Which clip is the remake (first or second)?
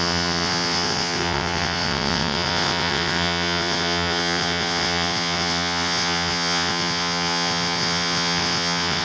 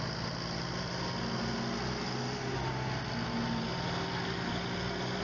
first